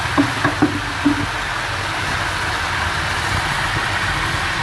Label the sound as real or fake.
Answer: real